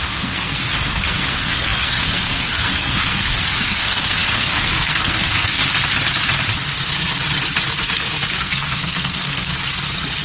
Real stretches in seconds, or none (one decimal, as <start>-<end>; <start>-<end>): 5.6-8.3; 9.5-10.2